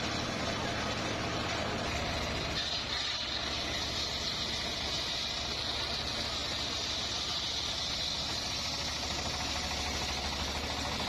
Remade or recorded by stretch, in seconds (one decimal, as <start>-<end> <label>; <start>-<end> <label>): 0.0-11.1 recorded